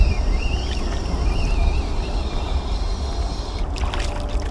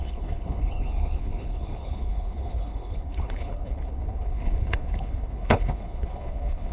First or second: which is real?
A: first